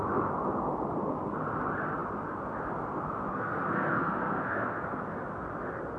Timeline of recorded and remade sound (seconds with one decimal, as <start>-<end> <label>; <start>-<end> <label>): 0.0-3.3 recorded; 3.3-5.0 remade; 5.0-6.0 recorded